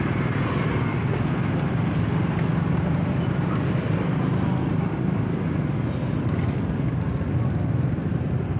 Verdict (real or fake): real